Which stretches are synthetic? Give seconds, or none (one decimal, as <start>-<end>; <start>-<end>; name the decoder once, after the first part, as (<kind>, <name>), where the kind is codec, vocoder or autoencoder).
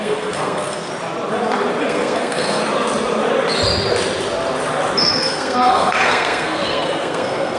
0.0-0.9 (codec, SNAC); 1.8-2.6; 5.0-7.6